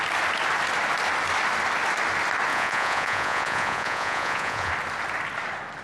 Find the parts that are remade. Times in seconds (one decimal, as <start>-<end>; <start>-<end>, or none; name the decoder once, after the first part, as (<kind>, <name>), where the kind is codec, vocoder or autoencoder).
2.5-4.7 (vocoder, Vocos)